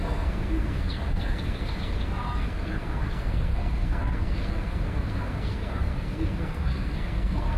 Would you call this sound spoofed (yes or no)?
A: yes